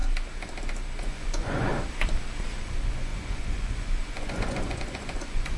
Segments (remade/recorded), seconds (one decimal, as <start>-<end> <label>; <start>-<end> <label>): 0.0-1.0 recorded; 1.0-1.7 remade; 1.7-2.6 recorded; 2.6-5.6 remade